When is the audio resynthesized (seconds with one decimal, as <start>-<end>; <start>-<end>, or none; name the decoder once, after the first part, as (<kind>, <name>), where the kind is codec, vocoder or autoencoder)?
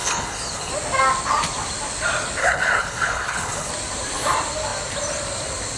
0.0-0.7 (codec, HILCodec); 2.4-3.7